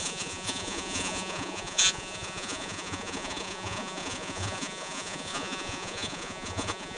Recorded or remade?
remade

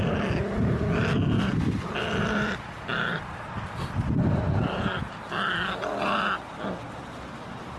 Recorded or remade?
recorded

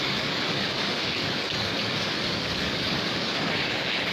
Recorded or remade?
remade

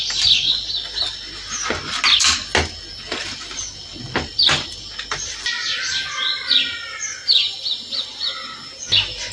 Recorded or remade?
recorded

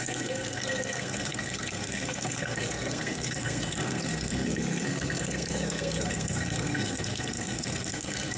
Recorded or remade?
remade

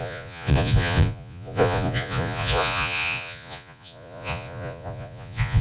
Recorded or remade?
remade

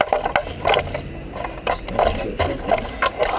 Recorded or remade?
recorded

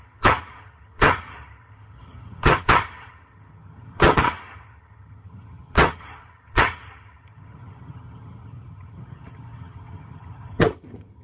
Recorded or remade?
remade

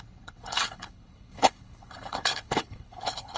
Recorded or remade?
remade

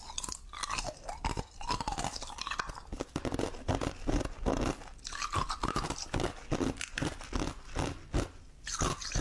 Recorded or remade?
recorded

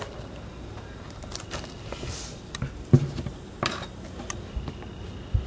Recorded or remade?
recorded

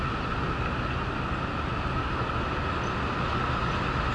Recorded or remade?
recorded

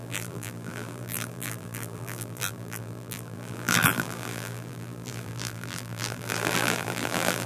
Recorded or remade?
remade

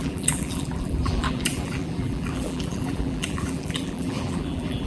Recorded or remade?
remade